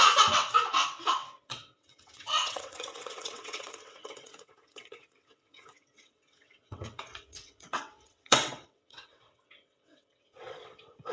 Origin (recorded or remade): remade